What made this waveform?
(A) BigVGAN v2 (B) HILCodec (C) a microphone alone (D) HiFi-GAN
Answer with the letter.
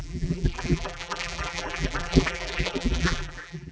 A